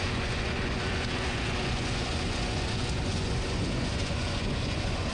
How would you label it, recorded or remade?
remade